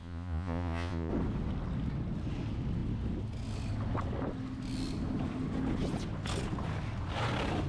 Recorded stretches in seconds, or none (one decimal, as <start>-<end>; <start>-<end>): 1.1-7.7